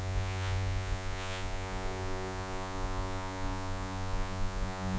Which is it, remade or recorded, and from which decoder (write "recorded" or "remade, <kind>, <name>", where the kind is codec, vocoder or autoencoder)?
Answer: remade, vocoder, Vocos